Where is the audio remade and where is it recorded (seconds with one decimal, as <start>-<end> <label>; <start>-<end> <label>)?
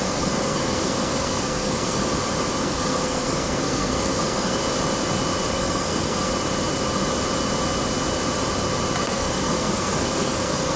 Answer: 0.0-2.0 remade; 2.0-2.6 recorded; 2.6-4.6 remade; 4.6-5.5 recorded; 5.5-6.3 remade; 6.3-9.0 recorded; 9.0-10.8 remade